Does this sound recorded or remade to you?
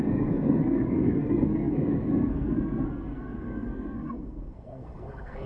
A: remade